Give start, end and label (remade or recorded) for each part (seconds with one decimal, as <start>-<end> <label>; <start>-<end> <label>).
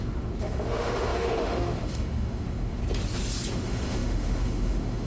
0.0-2.8 remade; 2.8-3.5 recorded; 3.5-5.1 remade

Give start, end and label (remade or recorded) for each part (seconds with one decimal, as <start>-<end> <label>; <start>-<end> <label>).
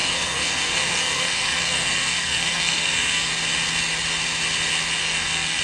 0.0-3.3 remade; 3.3-5.0 recorded; 5.0-5.6 remade